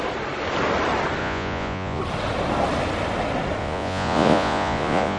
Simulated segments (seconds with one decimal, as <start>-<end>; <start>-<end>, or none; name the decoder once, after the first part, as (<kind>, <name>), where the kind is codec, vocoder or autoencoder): 1.2-2.0 (vocoder, Vocos); 3.6-5.2